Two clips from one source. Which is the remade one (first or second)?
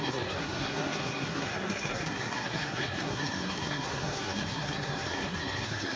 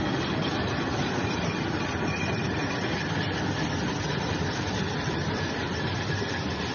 first